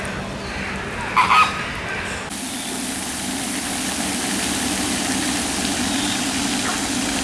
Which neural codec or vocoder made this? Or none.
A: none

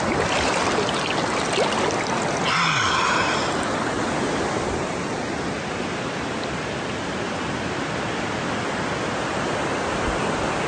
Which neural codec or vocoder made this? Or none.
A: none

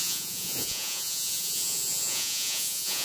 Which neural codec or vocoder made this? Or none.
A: vocoder, Vocos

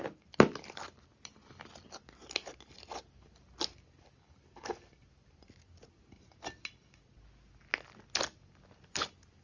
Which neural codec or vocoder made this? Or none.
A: none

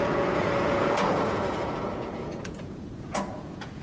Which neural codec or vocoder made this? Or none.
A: vocoder, Vocos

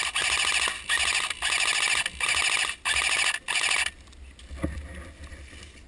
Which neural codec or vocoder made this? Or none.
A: none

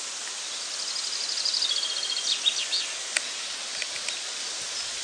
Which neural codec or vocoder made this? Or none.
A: none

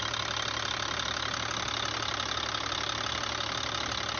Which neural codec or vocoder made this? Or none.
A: none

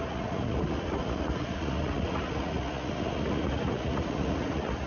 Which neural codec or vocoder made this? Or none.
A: vocoder, Vocos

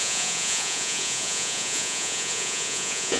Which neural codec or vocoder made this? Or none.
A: vocoder, Vocos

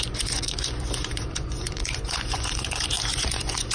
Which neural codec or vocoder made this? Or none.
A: vocoder, Vocos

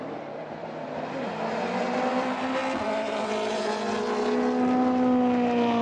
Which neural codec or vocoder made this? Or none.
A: none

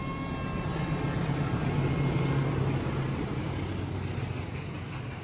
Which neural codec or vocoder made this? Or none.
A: none